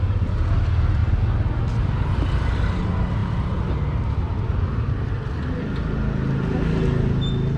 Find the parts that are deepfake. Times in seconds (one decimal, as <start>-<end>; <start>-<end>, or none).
none